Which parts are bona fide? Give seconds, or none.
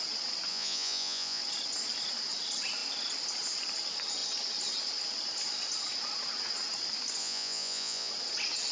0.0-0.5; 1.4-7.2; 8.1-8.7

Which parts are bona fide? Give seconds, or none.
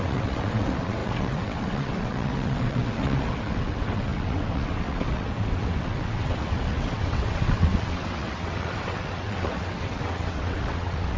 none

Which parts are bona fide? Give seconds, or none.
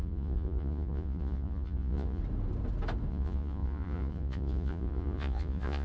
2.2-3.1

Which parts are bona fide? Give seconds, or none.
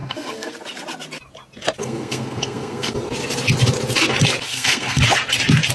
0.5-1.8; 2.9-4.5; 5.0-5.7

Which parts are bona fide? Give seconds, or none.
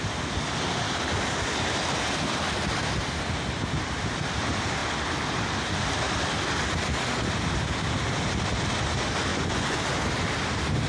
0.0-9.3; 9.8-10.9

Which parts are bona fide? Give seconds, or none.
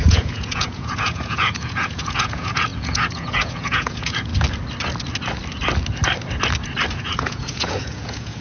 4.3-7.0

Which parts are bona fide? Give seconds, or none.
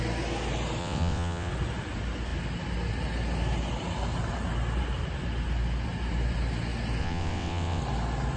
0.0-0.8; 1.5-7.0; 7.8-8.4